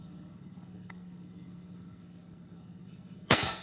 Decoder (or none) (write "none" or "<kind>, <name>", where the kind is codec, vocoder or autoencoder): codec, SNAC